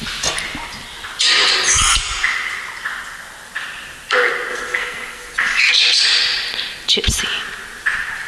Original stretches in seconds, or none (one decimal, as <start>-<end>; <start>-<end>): 0.0-4.5; 5.6-8.3